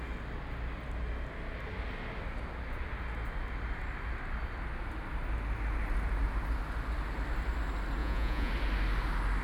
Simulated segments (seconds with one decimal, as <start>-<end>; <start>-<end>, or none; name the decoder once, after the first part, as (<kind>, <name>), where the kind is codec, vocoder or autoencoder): 8.0-8.5 (vocoder, Vocos)